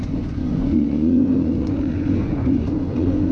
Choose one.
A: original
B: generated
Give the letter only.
B